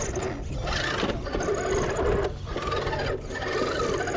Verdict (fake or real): real